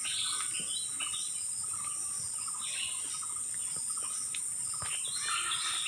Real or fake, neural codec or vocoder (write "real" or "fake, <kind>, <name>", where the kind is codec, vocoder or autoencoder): real